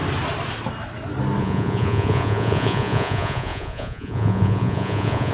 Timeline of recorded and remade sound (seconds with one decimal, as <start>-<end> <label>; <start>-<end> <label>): 0.0-1.4 recorded; 1.4-5.3 remade